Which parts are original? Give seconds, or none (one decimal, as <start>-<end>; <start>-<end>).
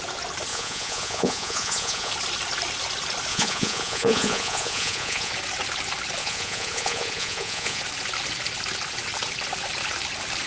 0.0-0.5; 2.1-3.3; 5.3-6.2; 7.8-10.5